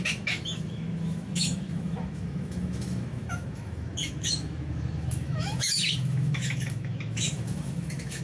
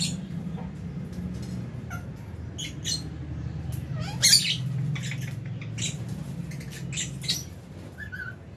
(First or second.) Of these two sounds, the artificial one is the first